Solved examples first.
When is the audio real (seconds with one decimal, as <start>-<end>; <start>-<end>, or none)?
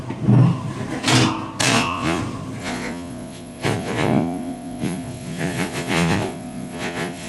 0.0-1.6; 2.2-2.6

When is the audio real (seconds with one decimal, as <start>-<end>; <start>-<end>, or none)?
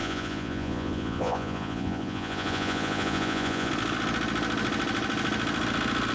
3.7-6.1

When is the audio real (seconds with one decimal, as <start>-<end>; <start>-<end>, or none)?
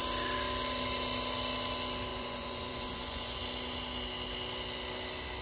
0.0-2.1; 3.4-5.4